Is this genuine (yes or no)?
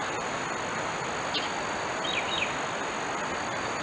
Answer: yes